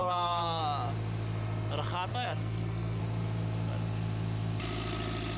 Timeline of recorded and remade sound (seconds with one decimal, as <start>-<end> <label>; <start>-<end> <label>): 0.0-0.6 remade; 0.6-2.1 recorded; 2.1-3.0 remade; 3.0-5.4 recorded

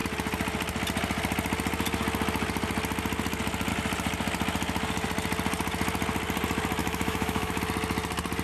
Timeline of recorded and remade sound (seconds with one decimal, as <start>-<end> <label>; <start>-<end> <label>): 0.0-6.8 recorded; 6.8-7.6 remade; 7.6-8.4 recorded

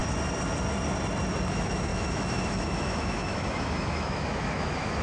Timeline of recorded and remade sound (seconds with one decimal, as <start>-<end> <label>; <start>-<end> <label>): 0.0-1.5 recorded; 1.5-5.0 remade